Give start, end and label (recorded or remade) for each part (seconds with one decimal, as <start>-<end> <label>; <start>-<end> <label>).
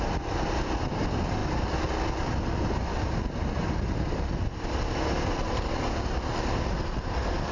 0.0-7.5 recorded